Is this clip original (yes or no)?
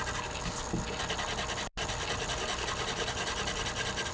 yes